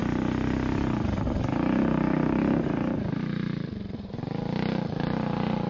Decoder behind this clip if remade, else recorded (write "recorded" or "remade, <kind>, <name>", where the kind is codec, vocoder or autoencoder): recorded